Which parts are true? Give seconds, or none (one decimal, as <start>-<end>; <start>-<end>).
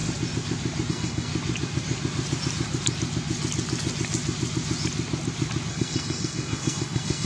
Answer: 0.0-0.9; 1.3-5.7